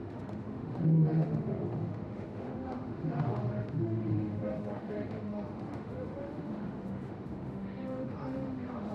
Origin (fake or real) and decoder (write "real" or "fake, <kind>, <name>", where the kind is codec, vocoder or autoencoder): fake, autoencoder, DAC-VAE